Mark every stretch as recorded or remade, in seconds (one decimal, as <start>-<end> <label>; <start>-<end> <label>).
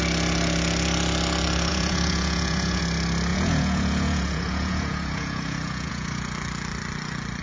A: 0.0-1.7 recorded; 1.7-2.8 remade; 2.8-3.3 recorded; 3.3-6.2 remade; 6.2-7.4 recorded